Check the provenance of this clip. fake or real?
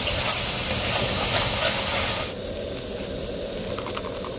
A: real